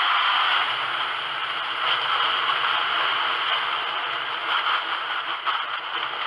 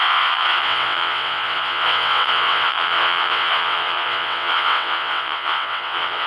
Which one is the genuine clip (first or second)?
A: first